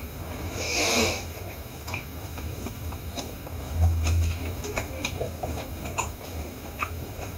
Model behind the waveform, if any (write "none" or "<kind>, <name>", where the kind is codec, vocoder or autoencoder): codec, DAC